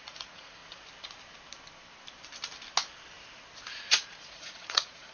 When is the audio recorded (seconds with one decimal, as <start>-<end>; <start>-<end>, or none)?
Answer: 0.6-3.7